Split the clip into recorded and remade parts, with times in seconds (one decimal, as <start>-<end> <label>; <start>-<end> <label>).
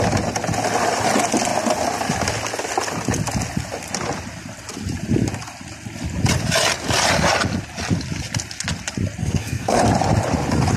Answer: 0.0-9.2 recorded; 9.2-9.8 remade; 9.8-10.8 recorded